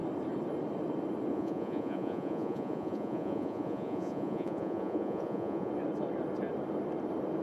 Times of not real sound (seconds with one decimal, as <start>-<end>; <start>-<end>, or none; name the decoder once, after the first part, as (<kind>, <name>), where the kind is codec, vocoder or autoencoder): 1.3-5.7 (vocoder, Vocos)